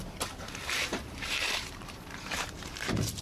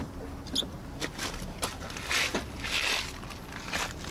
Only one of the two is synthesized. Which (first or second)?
first